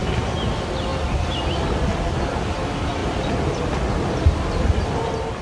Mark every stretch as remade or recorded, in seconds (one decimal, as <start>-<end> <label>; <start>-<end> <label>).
0.0-5.4 recorded